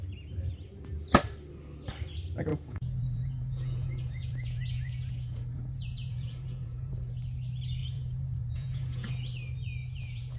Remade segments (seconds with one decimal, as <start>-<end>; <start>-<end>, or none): 2.5-7.1; 7.8-9.1; 9.8-10.4

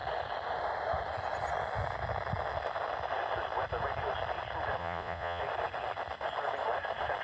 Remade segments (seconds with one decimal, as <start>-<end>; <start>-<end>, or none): 4.8-5.4

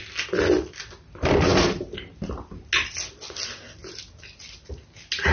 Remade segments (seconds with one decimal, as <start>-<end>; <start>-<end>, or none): none

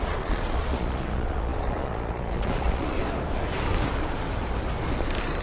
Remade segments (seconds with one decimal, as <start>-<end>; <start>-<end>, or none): 0.0-3.0

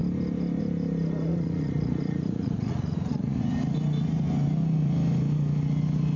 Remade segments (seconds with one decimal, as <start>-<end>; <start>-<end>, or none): 1.3-3.4